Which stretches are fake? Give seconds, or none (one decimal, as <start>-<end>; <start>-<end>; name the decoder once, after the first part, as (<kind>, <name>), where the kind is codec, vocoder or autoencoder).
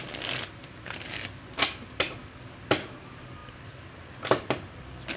none